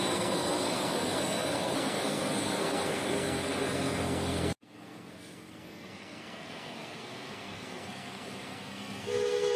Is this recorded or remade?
remade